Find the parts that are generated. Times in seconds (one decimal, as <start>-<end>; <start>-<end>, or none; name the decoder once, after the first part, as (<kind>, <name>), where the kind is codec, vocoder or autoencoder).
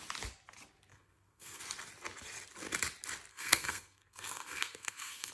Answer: 0.9-1.6 (codec, SNAC); 3.3-5.3